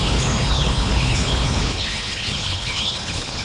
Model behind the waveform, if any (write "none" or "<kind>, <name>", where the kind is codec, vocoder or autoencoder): codec, HILCodec